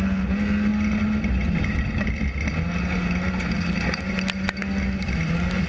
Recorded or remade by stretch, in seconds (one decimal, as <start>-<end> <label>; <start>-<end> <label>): 0.0-5.7 recorded